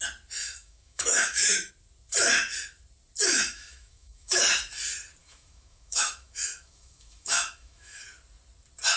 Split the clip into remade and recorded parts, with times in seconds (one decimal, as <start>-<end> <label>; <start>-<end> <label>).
0.0-0.4 recorded; 0.4-1.7 remade; 1.7-3.2 recorded; 3.2-4.4 remade; 4.4-5.2 recorded; 5.2-8.0 remade; 8.0-9.0 recorded